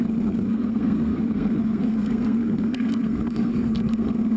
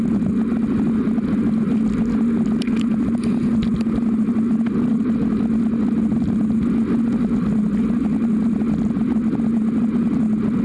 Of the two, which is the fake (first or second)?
first